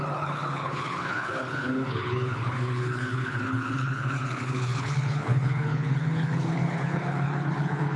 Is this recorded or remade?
remade